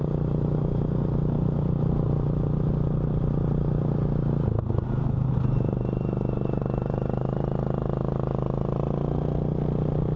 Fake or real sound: real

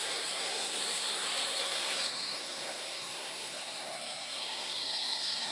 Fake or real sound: fake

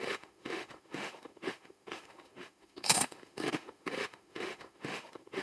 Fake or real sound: fake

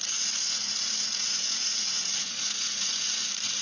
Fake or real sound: fake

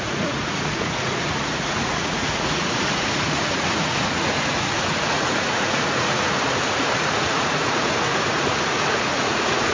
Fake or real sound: fake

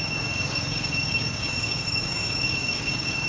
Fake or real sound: fake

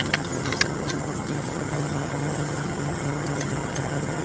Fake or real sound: fake